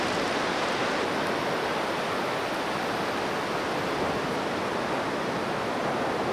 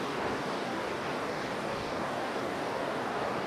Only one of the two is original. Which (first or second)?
first